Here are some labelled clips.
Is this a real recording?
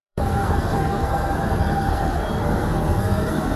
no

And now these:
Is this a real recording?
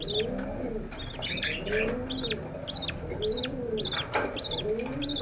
yes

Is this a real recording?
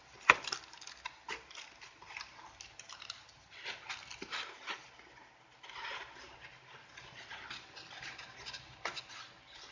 yes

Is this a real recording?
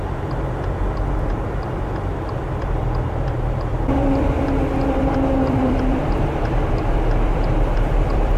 no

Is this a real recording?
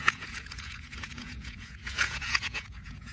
no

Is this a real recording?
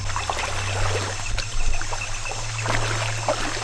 yes